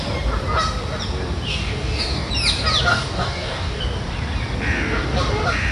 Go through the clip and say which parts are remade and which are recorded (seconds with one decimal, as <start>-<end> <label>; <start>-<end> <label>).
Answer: 0.0-1.5 recorded; 1.5-2.3 remade; 2.3-2.9 recorded; 2.9-3.8 remade; 3.8-5.7 recorded